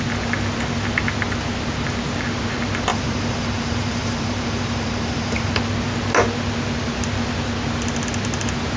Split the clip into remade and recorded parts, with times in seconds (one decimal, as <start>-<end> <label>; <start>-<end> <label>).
0.0-2.9 recorded; 2.9-5.5 remade; 5.5-8.8 recorded